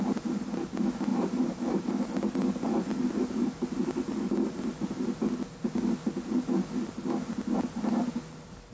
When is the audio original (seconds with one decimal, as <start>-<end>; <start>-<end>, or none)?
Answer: 0.0-1.1; 1.9-8.7